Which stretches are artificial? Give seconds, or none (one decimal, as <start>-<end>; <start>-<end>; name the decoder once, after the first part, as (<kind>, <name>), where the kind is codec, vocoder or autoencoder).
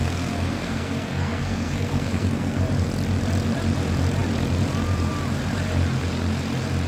0.0-2.6 (codec, SNAC)